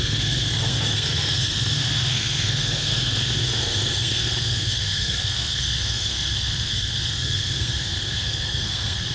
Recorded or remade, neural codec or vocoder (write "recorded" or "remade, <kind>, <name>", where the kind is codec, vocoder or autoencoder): remade, codec, SNAC